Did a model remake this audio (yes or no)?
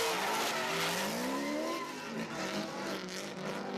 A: no